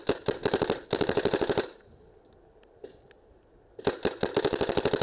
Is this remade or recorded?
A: recorded